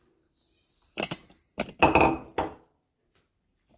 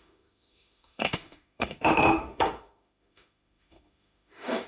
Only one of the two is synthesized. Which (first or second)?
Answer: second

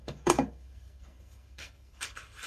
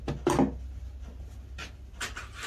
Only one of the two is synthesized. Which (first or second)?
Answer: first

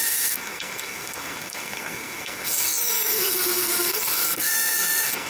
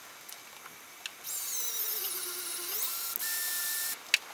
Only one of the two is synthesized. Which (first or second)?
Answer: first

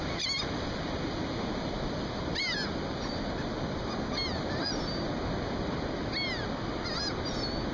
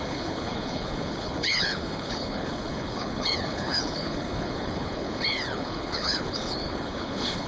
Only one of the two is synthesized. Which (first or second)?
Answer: second